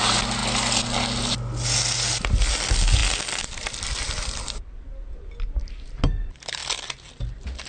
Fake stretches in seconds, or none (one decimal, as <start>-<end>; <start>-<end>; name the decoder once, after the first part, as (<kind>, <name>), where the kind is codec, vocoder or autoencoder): none